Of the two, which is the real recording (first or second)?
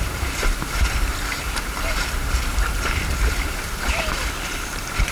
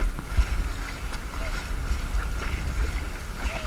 second